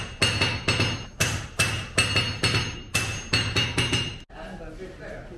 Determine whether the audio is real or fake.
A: real